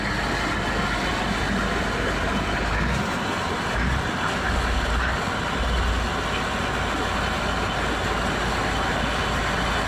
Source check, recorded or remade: recorded